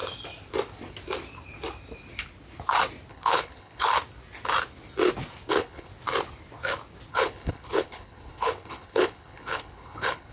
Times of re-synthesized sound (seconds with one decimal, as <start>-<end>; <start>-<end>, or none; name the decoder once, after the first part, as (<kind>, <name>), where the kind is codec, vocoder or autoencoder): 3.1-3.9 (codec, HILCodec); 5.5-5.9; 7.1-10.3